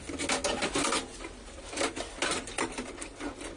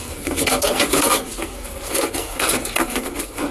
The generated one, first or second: second